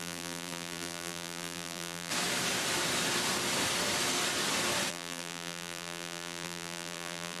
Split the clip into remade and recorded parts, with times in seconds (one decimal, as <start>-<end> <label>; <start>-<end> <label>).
0.0-2.1 remade; 2.1-4.9 recorded; 4.9-7.4 remade